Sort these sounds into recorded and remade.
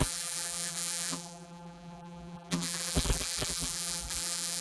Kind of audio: remade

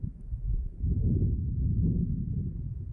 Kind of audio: recorded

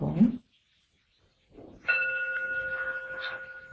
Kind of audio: recorded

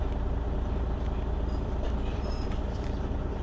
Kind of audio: remade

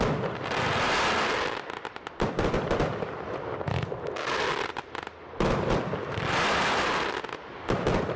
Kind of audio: recorded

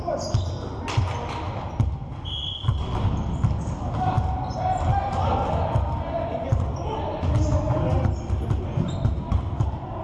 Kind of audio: recorded